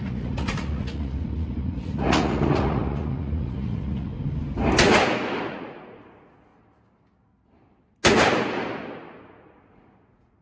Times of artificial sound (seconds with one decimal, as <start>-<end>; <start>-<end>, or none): 0.0-4.1; 5.5-6.5; 9.2-10.4